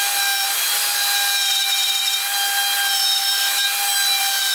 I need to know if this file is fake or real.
real